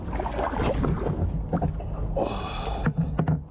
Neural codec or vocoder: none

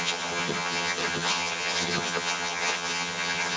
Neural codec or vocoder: vocoder, HiFi-GAN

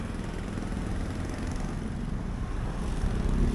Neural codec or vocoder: none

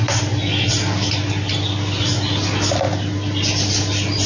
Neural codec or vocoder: none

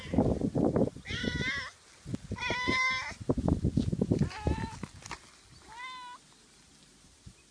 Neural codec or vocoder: none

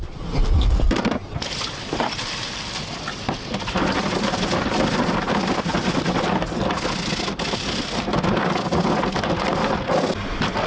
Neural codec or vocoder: none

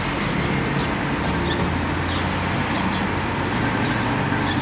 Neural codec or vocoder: none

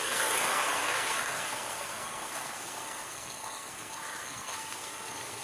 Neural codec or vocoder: codec, SNAC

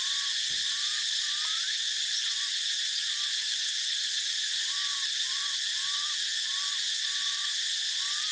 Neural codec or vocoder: none